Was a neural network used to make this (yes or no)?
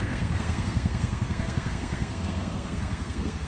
yes